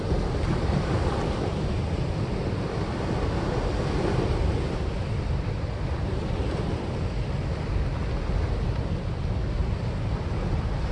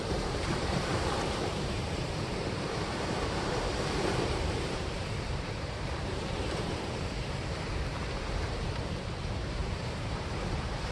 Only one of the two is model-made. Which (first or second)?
second